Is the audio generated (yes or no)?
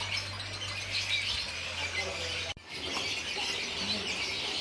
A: no